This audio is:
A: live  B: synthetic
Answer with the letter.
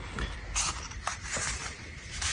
A